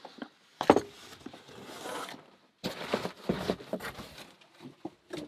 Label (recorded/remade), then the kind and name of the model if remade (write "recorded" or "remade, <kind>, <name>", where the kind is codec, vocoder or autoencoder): recorded